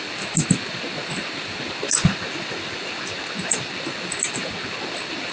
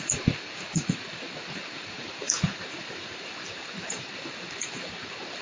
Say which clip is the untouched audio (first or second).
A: first